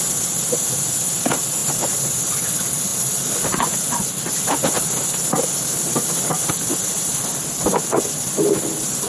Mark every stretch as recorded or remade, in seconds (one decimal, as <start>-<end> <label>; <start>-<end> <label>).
0.0-9.1 recorded